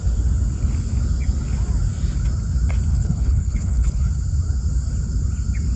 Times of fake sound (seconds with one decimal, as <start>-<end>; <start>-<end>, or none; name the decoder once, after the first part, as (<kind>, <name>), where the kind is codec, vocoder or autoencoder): 2.9-4.0 (codec, HILCodec)